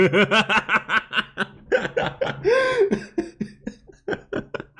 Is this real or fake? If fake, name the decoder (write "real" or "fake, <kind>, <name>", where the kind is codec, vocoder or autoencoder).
real